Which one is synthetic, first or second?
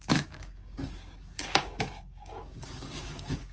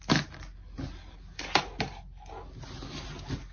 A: first